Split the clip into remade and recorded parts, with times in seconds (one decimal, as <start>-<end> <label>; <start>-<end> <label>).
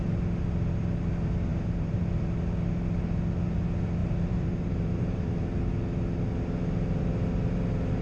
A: 0.0-1.5 recorded; 1.5-2.0 remade; 2.0-4.0 recorded; 4.0-5.4 remade; 5.4-8.0 recorded